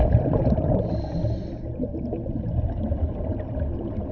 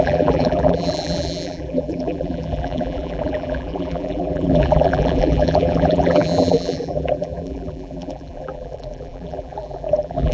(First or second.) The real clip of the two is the first